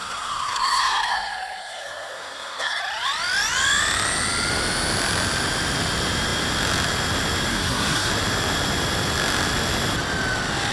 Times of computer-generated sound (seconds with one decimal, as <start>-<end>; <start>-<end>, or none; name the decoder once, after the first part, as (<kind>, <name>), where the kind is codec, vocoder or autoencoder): 0.0-2.8 (codec, SNAC); 7.5-8.1